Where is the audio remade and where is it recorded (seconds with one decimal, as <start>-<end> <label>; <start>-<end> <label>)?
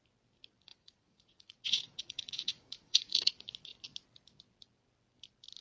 0.0-0.7 recorded; 0.7-3.3 remade; 3.3-5.6 recorded